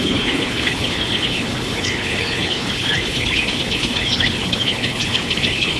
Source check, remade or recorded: remade